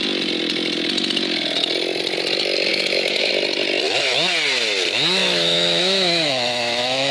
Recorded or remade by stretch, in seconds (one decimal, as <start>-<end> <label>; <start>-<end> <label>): 0.0-2.7 recorded; 2.7-3.3 remade; 3.3-5.2 recorded; 5.2-7.1 remade